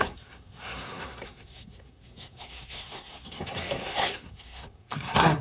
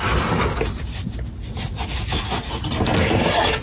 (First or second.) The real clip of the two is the second